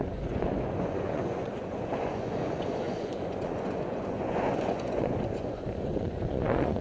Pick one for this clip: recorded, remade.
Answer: remade